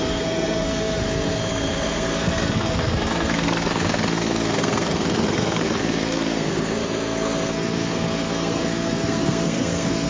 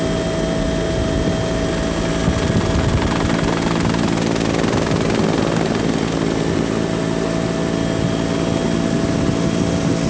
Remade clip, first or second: first